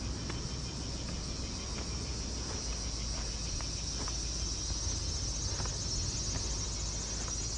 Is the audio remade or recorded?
recorded